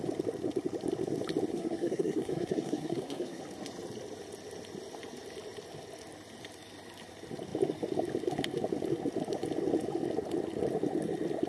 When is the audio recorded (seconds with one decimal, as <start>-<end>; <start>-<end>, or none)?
0.0-1.5; 3.4-11.5